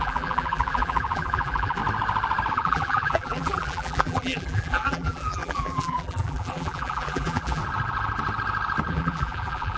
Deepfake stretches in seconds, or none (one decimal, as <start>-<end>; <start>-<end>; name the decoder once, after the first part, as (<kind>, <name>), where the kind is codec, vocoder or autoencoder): 0.0-1.8 (vocoder, BigVGAN v2); 2.5-7.6; 8.9-9.8